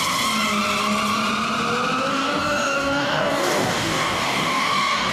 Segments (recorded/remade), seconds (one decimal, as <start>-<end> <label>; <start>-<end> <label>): 0.0-2.1 recorded; 2.1-5.1 remade